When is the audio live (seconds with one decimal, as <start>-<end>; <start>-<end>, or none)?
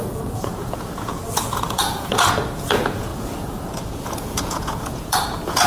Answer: none